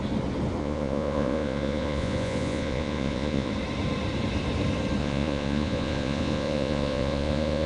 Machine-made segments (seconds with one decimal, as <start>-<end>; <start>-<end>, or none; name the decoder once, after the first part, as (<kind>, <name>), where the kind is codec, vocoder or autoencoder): 0.6-3.5 (vocoder, Vocos); 5.0-7.7